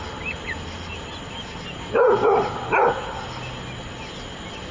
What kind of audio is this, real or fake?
real